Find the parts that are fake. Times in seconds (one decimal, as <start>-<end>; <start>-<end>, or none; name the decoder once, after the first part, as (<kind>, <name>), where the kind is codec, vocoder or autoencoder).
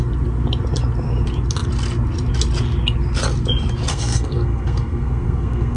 3.9-5.8 (codec, SNAC)